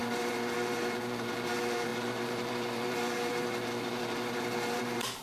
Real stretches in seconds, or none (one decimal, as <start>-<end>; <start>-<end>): none